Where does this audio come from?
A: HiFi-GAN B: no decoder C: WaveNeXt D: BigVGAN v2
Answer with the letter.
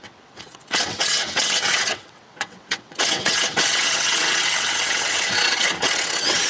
C